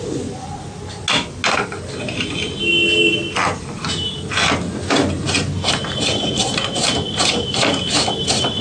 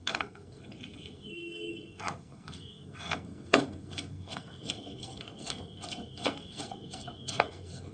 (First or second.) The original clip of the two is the first